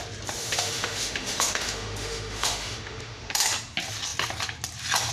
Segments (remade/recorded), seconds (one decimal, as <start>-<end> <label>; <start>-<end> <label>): 0.0-0.4 recorded; 0.4-3.5 remade; 3.5-5.1 recorded